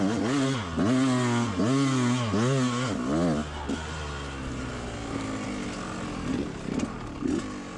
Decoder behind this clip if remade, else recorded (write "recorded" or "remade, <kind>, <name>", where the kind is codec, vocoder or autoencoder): recorded